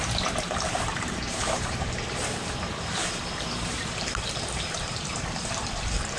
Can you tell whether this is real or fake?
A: fake